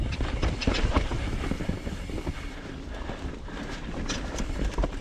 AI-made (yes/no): no